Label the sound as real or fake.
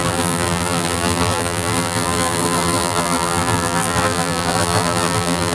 fake